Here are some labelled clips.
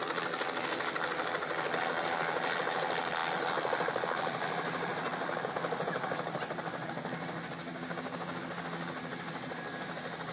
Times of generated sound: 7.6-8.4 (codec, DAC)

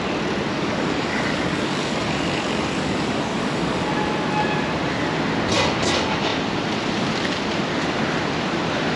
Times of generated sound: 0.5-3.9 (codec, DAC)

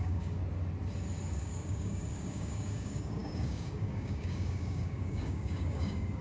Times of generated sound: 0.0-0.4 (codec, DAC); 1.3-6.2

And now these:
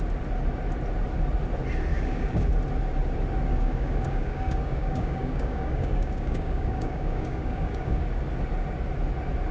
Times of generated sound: 1.9-2.5 (codec, DAC); 3.5-8.0

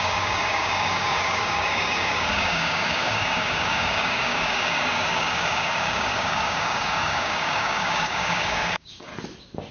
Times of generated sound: 0.0-9.1 (codec, DAC)

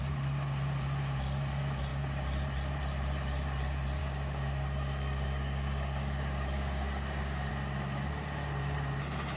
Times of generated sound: 4.0-7.5 (codec, DAC)

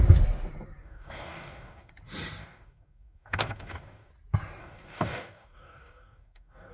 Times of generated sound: 0.8-1.9 (codec, DAC); 2.4-4.1; 4.6-6.7

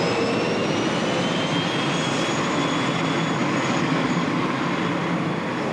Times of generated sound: 3.4-4.6 (codec, DAC)